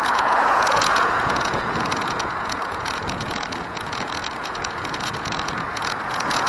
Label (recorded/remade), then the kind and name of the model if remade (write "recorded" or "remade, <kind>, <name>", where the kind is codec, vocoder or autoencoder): remade, vocoder, Vocos